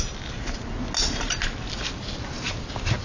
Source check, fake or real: real